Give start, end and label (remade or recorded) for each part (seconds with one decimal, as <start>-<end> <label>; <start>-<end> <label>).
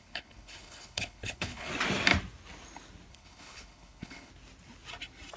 0.0-1.7 remade; 1.7-3.1 recorded; 3.1-4.3 remade; 4.3-5.4 recorded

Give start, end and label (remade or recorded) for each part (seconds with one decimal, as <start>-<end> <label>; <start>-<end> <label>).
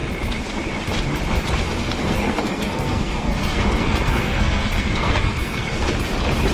0.0-2.0 recorded; 2.0-5.9 remade; 5.9-6.5 recorded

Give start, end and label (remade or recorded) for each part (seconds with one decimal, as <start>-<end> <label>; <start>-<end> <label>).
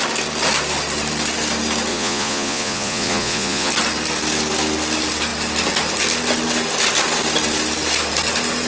0.0-1.9 recorded; 1.9-3.7 remade; 3.7-8.7 recorded